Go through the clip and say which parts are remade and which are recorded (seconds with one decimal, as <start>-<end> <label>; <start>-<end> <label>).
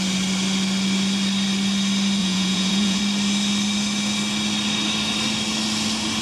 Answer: 0.0-2.2 recorded; 2.2-3.0 remade; 3.0-6.2 recorded